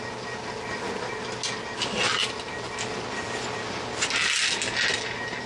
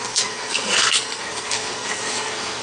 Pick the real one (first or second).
first